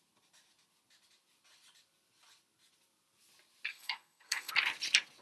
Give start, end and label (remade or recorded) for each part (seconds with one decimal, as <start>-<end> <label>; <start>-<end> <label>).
0.0-3.7 recorded; 3.7-4.5 remade; 4.5-5.2 recorded